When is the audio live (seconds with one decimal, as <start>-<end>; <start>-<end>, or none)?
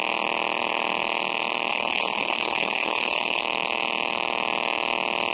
0.0-1.7; 3.4-5.3